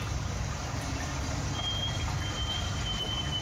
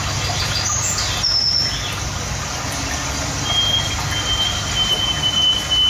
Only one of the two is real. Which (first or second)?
second